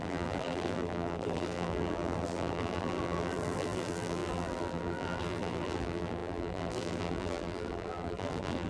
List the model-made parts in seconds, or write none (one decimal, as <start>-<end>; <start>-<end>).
0.0-8.7